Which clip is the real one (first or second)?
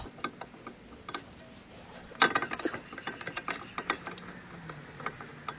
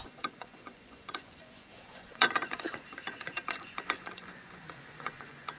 first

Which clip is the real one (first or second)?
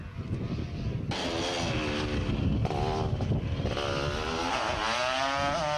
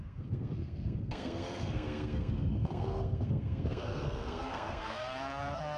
first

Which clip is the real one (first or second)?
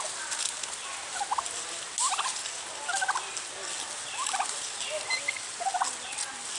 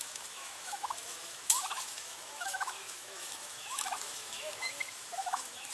first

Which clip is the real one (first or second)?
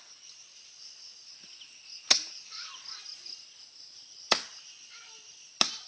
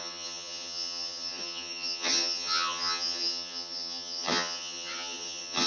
first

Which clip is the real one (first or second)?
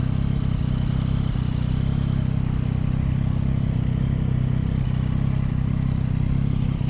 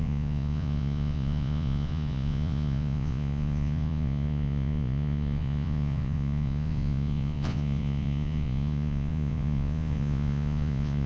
first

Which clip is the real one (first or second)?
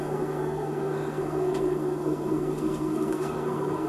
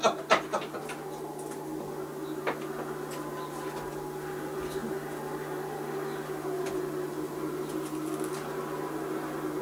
second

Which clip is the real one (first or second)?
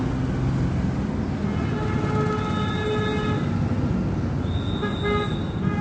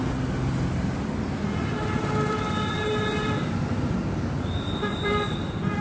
first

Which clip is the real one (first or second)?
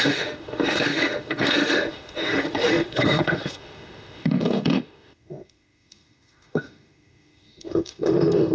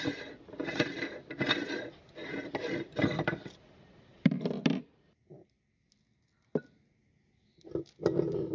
second